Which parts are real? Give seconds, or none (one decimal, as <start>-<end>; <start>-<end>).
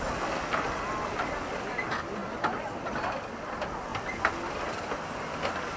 0.0-5.8